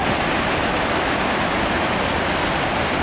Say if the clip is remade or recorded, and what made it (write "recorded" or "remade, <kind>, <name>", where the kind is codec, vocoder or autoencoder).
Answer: recorded